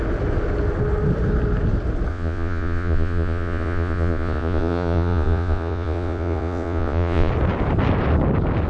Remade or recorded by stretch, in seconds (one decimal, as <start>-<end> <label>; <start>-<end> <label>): 0.0-2.1 recorded; 2.1-7.3 remade; 7.3-8.7 recorded